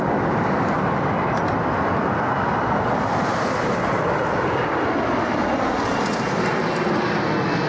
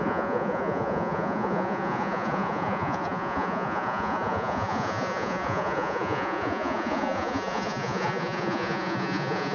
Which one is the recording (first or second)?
first